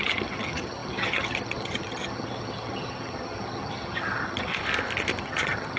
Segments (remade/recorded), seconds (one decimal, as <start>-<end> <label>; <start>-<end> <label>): 0.0-4.5 remade; 4.5-5.2 recorded; 5.2-5.8 remade